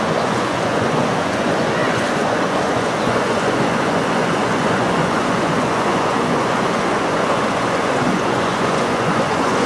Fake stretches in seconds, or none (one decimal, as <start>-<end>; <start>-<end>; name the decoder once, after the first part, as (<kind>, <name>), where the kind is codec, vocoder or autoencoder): 0.0-9.7 (vocoder, Vocos)